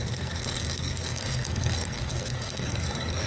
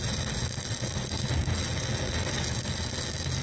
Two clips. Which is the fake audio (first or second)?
first